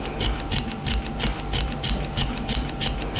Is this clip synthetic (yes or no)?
no